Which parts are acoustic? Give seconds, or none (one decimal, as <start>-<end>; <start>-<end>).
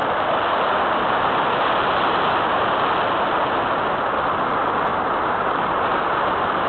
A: 0.0-4.9; 5.6-6.7